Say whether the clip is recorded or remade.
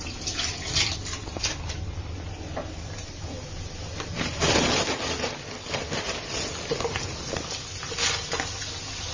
recorded